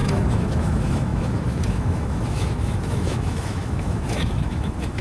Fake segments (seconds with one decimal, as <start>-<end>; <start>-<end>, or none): 0.0-5.0